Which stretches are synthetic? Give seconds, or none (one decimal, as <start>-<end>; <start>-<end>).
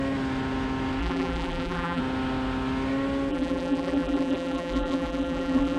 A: 1.0-2.0; 3.3-5.8